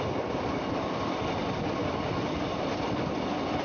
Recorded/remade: recorded